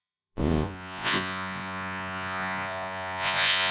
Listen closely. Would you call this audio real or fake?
fake